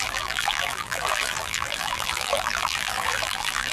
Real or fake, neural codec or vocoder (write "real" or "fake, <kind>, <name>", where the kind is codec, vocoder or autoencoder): fake, vocoder, BigVGAN v2